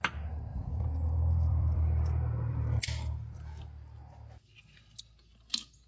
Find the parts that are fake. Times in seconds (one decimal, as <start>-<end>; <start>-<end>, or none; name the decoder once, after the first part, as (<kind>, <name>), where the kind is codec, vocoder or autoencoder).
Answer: 0.5-4.0 (vocoder, BigVGAN v2)